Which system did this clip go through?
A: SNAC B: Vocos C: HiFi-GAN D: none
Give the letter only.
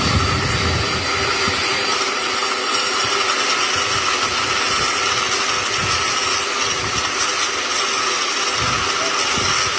D